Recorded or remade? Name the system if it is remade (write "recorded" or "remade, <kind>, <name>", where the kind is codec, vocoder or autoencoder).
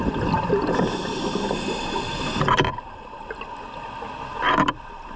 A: remade, vocoder, BigVGAN v2